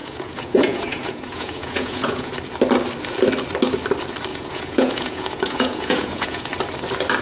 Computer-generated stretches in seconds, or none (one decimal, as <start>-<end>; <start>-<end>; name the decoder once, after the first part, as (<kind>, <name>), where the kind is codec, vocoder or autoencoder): 0.0-2.3 (vocoder, Vocos); 4.3-6.5